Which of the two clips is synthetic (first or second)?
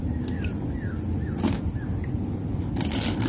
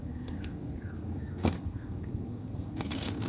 second